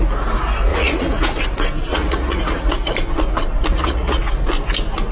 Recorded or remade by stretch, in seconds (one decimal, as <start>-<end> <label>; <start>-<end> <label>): 0.0-0.7 recorded; 0.7-1.4 remade; 1.4-1.9 recorded; 1.9-2.7 remade; 2.7-3.7 recorded; 3.7-4.2 remade; 4.2-5.1 recorded